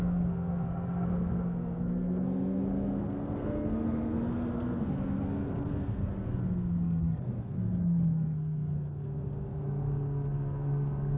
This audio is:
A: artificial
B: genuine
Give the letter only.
A